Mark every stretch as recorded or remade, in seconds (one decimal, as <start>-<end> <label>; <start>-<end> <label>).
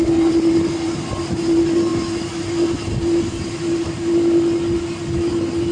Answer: 0.0-5.7 recorded